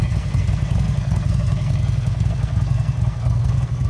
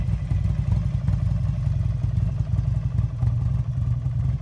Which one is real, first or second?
second